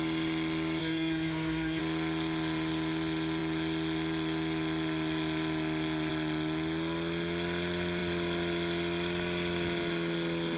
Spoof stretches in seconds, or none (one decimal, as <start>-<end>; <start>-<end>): 0.8-1.8